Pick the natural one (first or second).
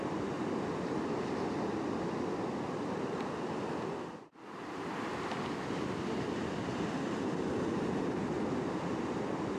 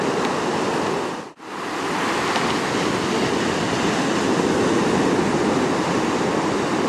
second